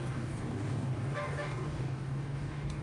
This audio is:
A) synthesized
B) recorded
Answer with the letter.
A